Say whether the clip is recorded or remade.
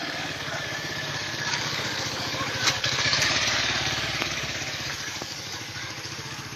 remade